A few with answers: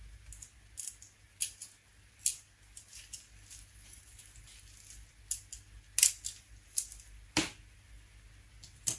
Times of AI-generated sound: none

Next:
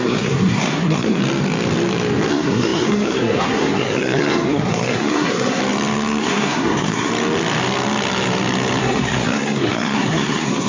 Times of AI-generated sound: 0.0-1.2; 2.3-5.6; 6.2-7.1; 8.8-10.7

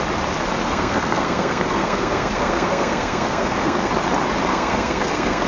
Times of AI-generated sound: 0.6-3.9; 4.5-5.5

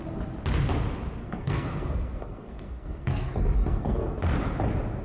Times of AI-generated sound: 1.2-4.2

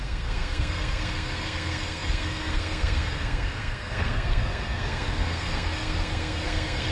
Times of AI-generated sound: 0.0-6.9

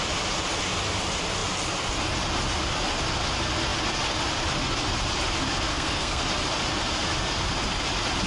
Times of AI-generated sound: 5.7-6.2

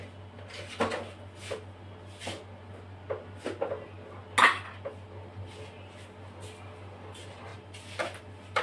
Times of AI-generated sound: none